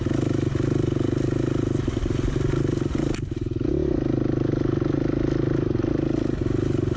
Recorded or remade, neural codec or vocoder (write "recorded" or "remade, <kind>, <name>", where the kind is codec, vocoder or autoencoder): recorded